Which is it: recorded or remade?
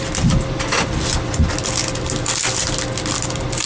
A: recorded